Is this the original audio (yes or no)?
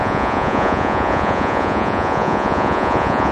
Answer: no